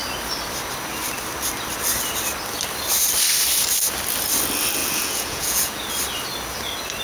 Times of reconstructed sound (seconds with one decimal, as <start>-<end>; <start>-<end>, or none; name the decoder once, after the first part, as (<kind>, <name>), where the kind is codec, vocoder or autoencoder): 4.8-5.9 (vocoder, Vocos)